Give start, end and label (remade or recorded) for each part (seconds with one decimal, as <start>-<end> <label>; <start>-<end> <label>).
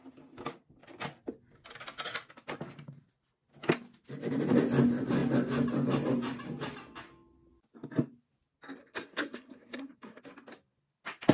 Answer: 0.0-8.8 recorded; 8.8-10.2 remade; 10.2-11.3 recorded